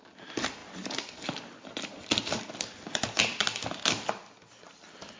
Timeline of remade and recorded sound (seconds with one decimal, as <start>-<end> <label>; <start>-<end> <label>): 0.0-5.2 recorded